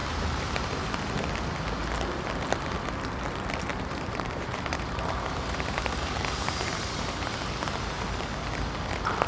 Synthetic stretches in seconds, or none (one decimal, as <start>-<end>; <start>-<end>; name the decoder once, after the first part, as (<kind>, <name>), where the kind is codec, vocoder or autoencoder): 0.0-0.8 (vocoder, BigVGAN v2); 3.7-7.3